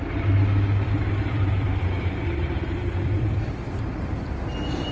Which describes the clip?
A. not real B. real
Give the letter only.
A